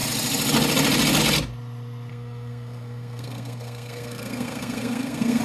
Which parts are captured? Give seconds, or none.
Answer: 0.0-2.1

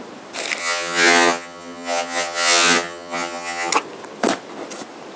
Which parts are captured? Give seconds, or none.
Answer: 0.0-0.6; 3.7-5.2

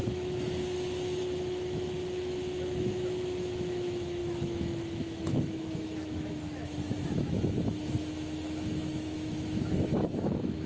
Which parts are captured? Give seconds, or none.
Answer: none